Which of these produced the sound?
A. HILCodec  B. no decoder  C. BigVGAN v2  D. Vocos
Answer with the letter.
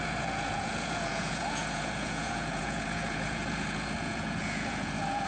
D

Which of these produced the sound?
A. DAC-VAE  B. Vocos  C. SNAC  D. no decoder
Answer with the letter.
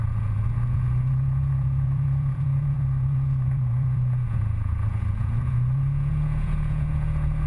B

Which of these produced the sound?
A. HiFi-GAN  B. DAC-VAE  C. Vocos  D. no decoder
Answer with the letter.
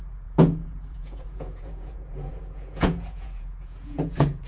C